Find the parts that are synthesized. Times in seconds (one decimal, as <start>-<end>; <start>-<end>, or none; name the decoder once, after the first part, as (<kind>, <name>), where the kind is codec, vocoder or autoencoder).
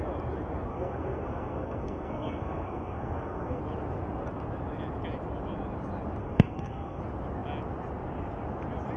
0.7-3.6 (codec, SNAC); 6.2-7.0